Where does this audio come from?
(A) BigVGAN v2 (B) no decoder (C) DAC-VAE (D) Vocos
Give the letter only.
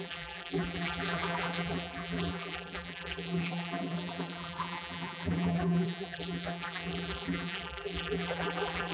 A